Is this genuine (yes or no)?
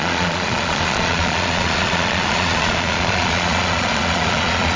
no